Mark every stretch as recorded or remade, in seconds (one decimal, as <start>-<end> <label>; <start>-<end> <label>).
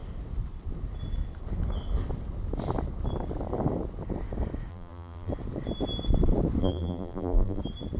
0.0-4.7 recorded; 4.7-5.3 remade; 5.3-6.6 recorded; 6.6-7.6 remade; 7.6-8.0 recorded